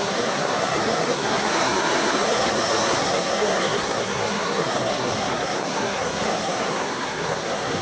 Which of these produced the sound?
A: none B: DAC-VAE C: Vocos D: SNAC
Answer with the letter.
D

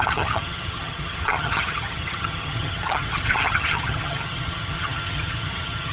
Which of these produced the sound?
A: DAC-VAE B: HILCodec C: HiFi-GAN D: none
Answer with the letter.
C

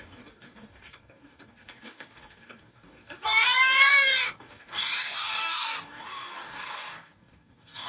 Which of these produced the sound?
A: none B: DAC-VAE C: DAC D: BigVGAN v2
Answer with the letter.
C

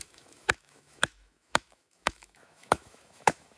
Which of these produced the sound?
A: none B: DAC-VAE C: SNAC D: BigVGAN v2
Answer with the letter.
B